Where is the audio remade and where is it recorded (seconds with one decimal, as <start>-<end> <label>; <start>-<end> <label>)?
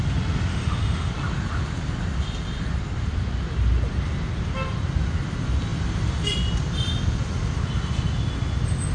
0.0-0.5 recorded; 0.5-1.1 remade; 1.1-8.9 recorded